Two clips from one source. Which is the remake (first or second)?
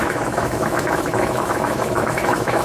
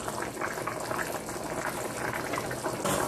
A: first